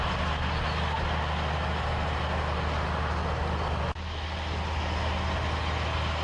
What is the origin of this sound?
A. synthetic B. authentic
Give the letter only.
B